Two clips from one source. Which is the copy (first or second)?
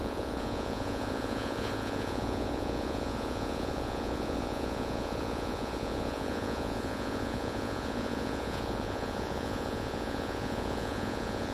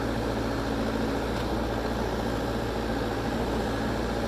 first